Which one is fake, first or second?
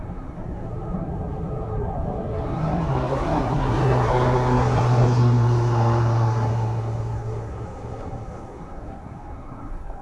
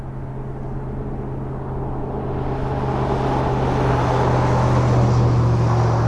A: first